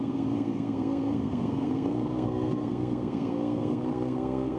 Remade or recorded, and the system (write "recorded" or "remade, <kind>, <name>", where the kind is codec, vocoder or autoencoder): remade, codec, SNAC